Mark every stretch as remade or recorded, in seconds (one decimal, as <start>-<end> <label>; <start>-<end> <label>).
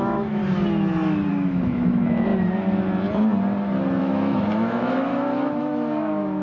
0.0-0.4 remade; 0.4-1.3 recorded; 1.3-2.3 remade; 2.3-4.0 recorded; 4.0-5.1 remade; 5.1-5.6 recorded; 5.6-6.4 remade